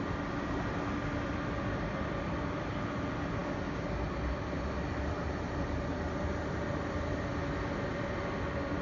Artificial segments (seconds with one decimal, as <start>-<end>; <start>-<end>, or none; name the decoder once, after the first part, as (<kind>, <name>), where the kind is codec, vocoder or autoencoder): none